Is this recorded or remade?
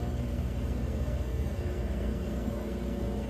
remade